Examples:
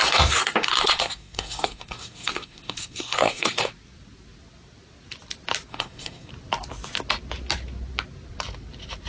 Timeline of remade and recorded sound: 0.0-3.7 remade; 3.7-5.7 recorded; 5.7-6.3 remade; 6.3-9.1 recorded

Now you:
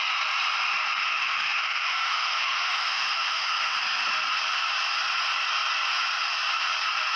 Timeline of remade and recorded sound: 0.0-1.0 recorded; 1.0-3.8 remade; 3.8-7.2 recorded